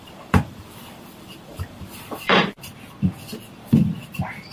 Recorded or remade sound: remade